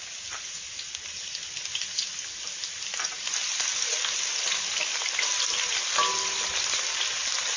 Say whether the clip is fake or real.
real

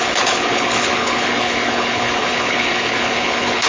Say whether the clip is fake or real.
fake